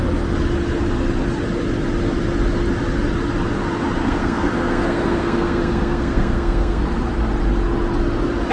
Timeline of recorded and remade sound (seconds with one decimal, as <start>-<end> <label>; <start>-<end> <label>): 0.0-4.0 recorded; 4.0-6.8 remade; 6.8-8.5 recorded